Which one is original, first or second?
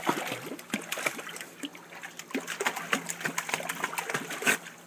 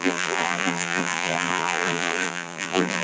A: first